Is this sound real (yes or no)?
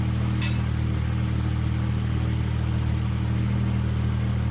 yes